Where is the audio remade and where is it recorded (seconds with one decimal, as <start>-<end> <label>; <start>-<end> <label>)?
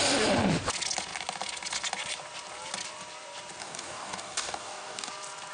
0.0-3.6 recorded; 3.6-5.1 remade; 5.1-5.5 recorded